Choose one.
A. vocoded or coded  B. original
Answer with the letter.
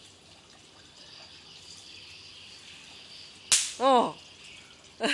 B